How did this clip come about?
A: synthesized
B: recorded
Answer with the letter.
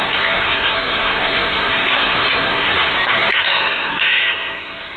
A